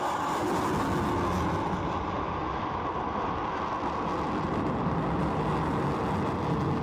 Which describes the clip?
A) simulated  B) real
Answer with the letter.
B